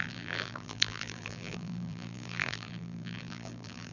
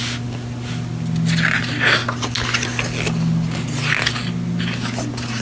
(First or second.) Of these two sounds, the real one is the second